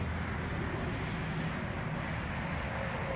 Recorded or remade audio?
recorded